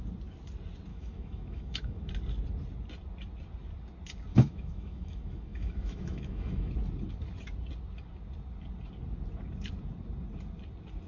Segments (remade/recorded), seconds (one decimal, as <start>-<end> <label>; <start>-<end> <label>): 0.0-0.9 recorded; 0.9-2.1 remade; 2.1-4.3 recorded; 4.3-6.7 remade; 6.7-11.1 recorded